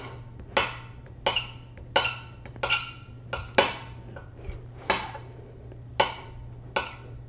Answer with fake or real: real